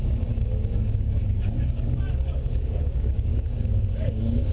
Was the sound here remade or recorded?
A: remade